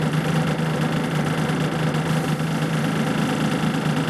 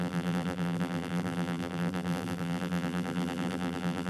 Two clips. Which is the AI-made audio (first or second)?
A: second